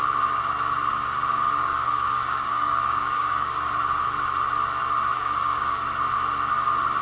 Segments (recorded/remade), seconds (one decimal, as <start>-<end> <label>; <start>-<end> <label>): 0.0-1.6 recorded; 1.6-3.7 remade; 3.7-5.1 recorded; 5.1-5.8 remade; 5.8-7.0 recorded